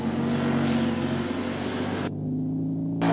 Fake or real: real